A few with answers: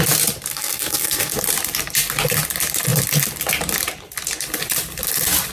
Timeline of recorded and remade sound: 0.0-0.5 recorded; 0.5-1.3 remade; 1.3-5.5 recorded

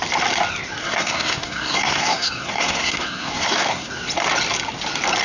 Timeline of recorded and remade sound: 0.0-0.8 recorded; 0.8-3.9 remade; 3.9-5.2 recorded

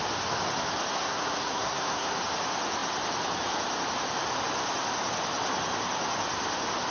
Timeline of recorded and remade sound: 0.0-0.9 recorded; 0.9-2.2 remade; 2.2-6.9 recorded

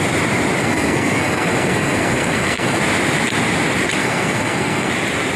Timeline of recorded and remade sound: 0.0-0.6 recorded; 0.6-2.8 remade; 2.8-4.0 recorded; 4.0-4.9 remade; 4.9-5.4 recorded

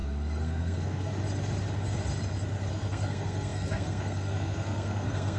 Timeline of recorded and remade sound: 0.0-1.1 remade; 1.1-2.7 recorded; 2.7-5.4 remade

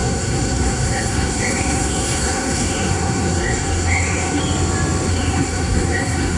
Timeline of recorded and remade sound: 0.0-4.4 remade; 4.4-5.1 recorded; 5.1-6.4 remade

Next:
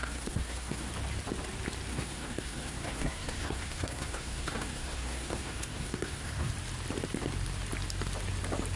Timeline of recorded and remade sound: 0.0-0.9 remade; 0.9-1.9 recorded; 1.9-6.5 remade; 6.5-8.8 recorded

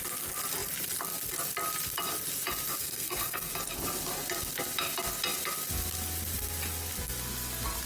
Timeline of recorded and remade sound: 0.0-2.8 recorded; 2.8-3.5 remade; 3.5-7.9 recorded